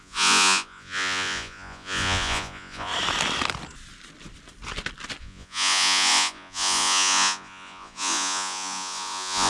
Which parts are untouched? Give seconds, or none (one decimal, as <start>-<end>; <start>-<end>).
2.9-5.2